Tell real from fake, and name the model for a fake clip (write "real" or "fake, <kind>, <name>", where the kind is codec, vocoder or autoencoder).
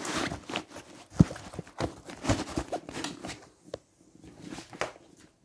real